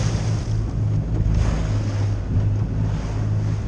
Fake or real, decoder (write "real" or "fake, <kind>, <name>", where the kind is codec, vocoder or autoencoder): real